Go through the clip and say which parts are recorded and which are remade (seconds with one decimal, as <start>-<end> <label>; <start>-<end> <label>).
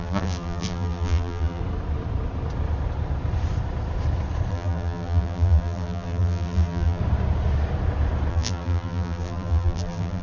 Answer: 0.0-1.6 remade; 1.6-4.5 recorded; 4.5-7.0 remade; 7.0-8.3 recorded; 8.3-10.2 remade